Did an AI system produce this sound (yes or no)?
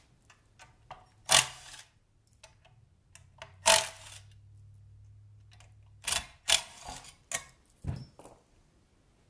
no